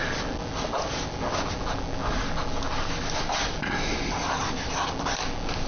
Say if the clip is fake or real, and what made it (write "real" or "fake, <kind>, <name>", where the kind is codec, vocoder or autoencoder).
real